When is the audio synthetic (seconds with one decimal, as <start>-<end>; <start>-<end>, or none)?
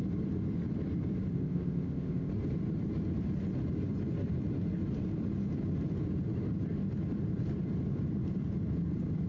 1.3-2.3